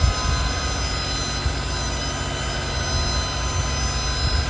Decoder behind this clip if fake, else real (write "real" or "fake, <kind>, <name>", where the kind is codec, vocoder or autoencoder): real